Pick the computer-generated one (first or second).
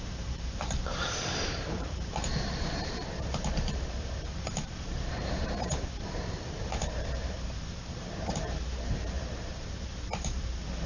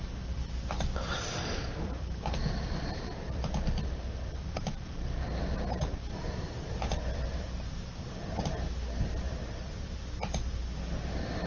first